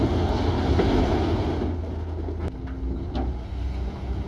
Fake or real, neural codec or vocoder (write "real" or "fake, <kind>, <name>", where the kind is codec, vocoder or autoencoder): real